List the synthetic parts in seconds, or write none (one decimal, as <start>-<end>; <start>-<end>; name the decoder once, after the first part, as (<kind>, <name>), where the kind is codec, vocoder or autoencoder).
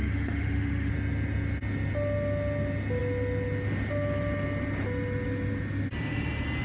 0.0-0.9 (autoencoder, DAC-VAE)